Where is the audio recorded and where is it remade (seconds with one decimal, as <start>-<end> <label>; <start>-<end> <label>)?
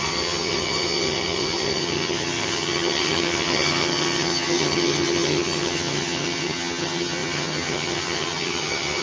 0.0-9.0 remade